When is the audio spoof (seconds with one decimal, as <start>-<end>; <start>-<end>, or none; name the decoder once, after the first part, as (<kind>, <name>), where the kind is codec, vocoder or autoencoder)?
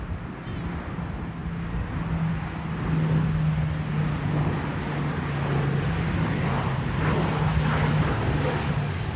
none